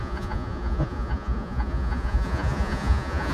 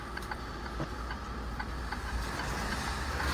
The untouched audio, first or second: second